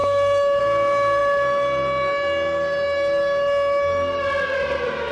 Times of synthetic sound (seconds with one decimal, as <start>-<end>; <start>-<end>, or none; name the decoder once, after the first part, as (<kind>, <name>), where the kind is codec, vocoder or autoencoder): 0.0-0.6 (autoencoder, DAC-VAE)